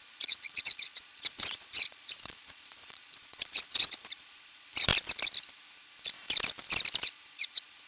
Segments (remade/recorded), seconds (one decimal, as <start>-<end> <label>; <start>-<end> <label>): 0.0-4.9 remade; 4.9-7.0 recorded; 7.0-7.9 remade